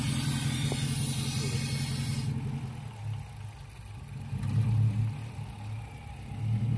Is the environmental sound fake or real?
real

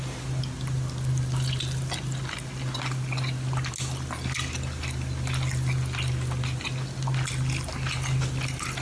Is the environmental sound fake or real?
real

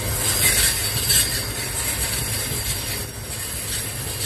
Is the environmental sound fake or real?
real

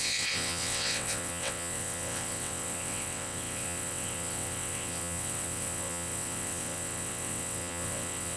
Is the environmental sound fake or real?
fake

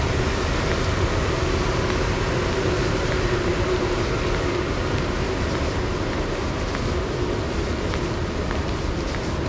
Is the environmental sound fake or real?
real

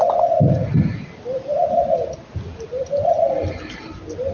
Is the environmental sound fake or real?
real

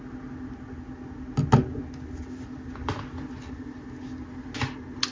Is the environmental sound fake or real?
real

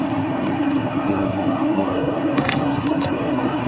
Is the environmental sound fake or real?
fake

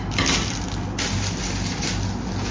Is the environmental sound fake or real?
real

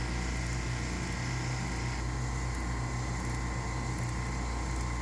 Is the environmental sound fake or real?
real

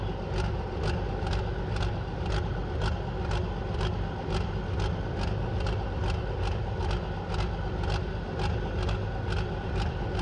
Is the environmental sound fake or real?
real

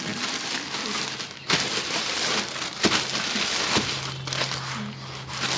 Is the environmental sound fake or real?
real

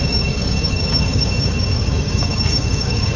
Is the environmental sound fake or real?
fake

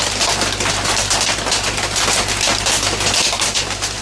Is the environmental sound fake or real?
real